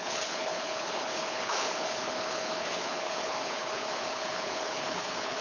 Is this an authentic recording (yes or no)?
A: no